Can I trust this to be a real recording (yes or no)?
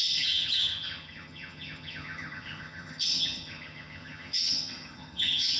no